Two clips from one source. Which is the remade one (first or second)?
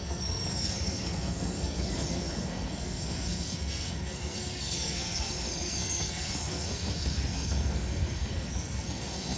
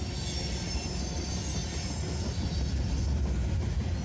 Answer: first